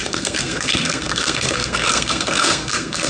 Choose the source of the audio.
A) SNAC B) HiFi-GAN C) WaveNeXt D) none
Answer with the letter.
A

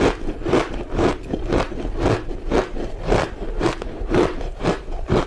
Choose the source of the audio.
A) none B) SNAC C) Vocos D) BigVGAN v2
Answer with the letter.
A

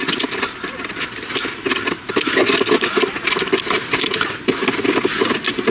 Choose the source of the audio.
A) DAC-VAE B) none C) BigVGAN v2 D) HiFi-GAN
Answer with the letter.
B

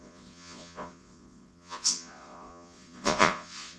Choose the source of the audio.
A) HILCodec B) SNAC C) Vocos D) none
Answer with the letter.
C